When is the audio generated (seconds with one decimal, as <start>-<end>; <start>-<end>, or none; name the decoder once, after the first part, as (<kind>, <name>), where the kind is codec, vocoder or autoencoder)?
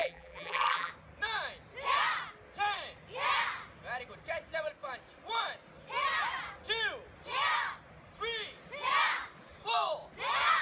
0.0-0.9 (vocoder, BigVGAN v2)